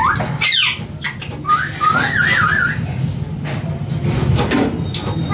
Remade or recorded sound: recorded